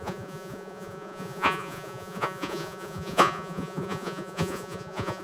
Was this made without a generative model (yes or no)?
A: no